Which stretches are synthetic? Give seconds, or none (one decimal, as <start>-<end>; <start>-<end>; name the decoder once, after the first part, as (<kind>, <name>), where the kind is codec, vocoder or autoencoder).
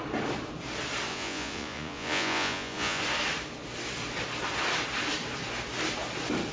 1.1-3.0 (vocoder, Vocos)